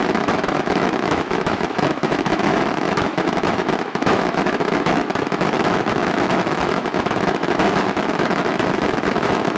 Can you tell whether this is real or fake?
fake